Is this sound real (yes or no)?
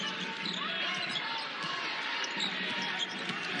yes